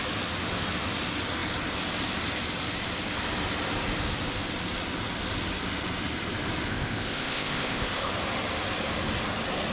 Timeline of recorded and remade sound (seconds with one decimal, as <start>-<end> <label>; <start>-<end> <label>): 0.0-6.7 recorded; 6.7-8.1 remade; 8.1-9.7 recorded